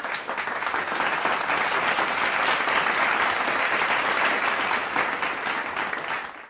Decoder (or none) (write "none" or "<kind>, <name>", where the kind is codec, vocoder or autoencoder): none